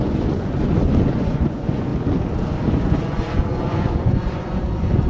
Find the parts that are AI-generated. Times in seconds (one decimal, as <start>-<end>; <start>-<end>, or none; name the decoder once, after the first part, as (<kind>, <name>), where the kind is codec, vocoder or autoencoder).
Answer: 0.0-1.9 (vocoder, Vocos); 2.6-5.1